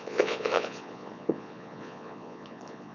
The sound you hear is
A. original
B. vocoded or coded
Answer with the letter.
B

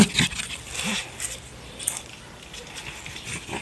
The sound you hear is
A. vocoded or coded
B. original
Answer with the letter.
B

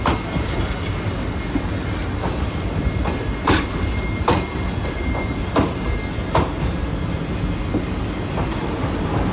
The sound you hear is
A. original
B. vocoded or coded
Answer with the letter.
A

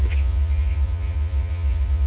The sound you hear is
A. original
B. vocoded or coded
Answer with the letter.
B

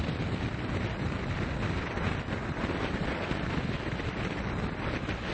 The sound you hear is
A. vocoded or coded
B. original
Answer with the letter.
B